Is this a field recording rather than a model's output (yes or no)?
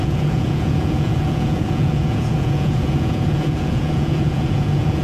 no